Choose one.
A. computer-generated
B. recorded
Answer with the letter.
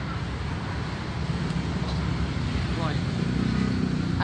B